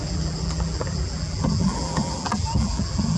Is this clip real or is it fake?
fake